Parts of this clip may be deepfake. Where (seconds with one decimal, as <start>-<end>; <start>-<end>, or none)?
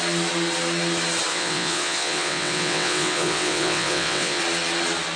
1.3-4.4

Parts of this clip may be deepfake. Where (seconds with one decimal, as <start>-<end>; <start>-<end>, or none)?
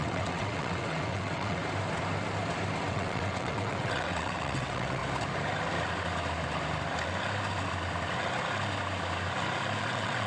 0.0-1.6; 2.9-5.0; 9.8-10.3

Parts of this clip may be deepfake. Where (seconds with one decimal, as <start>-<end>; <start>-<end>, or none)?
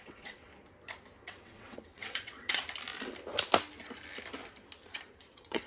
0.0-0.5; 1.2-2.6; 5.2-5.7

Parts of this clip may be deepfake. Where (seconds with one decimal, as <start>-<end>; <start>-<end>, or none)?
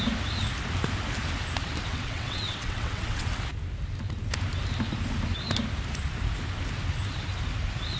1.9-3.3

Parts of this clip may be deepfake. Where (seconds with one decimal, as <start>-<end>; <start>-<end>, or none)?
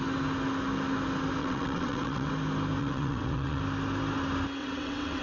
1.4-2.3; 2.8-3.6; 4.6-5.2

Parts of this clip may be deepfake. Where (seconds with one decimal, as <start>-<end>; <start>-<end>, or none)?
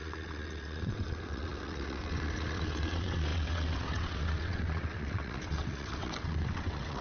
0.0-7.0